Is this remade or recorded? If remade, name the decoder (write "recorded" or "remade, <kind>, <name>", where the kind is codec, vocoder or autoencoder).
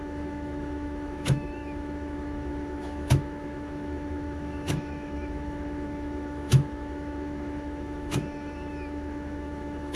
remade, autoencoder, DAC-VAE